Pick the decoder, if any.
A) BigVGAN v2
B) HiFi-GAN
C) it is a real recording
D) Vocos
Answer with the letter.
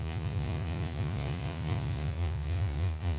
D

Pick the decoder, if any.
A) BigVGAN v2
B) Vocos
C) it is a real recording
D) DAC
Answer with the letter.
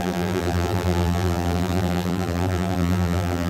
A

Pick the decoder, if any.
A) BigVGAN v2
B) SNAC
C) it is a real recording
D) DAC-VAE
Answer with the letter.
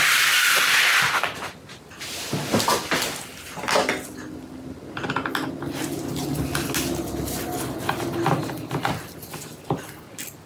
C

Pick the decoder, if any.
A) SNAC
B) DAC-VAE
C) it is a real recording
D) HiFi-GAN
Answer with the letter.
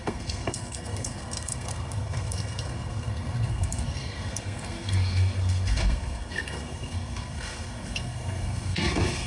A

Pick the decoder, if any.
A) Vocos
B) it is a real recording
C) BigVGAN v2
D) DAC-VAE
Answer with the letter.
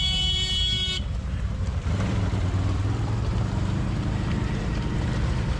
C